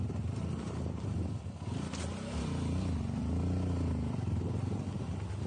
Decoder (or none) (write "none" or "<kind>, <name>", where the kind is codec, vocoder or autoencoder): none